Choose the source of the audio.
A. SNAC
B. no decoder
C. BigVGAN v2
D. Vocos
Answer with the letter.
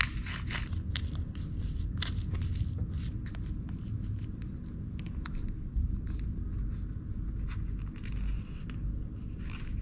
B